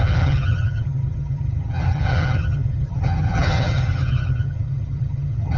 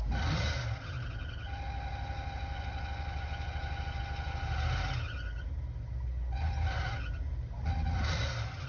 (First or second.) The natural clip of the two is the second